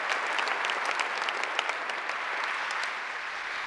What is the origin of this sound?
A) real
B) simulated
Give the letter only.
A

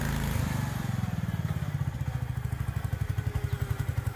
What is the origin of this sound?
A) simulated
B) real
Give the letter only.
B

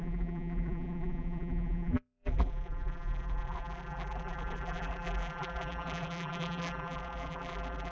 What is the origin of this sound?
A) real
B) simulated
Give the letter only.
B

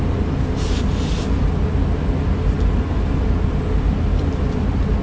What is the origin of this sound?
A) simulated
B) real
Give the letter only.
B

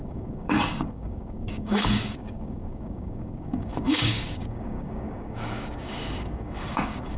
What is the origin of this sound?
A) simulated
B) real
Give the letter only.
A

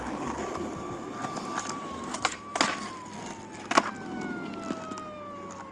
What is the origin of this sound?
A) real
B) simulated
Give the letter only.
A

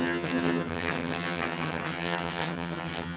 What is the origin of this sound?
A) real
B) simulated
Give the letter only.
B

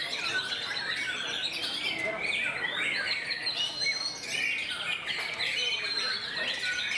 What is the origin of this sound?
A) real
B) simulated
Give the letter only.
A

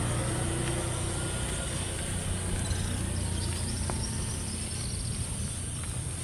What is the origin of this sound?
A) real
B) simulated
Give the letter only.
A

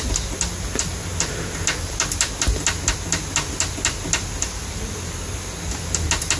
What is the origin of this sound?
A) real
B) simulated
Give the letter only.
A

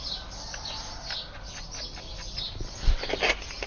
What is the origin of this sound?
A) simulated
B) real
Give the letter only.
B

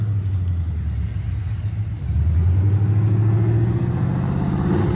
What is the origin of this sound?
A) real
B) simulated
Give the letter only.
A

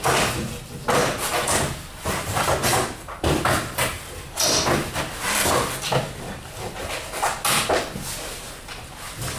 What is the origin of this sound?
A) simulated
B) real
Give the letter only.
B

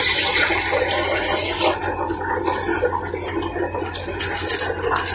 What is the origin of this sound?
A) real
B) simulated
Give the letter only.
A